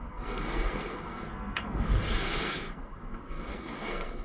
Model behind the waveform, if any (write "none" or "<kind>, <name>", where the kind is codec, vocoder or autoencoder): codec, SNAC